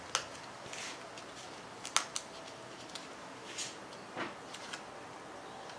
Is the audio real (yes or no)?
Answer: yes